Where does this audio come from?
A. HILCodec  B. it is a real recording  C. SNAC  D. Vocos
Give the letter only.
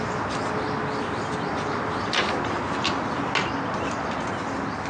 B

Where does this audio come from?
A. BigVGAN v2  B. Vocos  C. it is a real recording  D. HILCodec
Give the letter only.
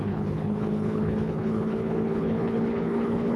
D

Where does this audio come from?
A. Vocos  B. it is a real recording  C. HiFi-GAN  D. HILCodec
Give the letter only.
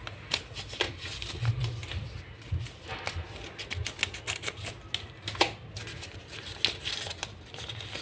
B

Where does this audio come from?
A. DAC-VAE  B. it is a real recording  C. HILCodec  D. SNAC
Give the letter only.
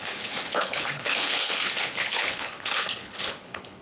C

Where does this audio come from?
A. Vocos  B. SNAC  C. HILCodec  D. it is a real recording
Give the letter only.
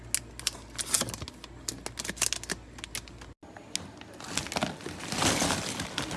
D